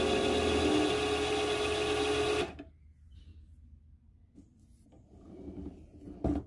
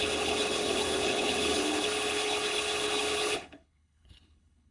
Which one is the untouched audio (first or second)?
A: first